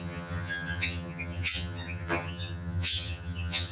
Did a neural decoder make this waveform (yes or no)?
yes